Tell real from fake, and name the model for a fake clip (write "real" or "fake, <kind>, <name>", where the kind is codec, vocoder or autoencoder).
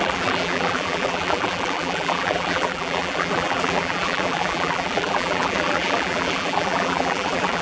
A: fake, vocoder, BigVGAN v2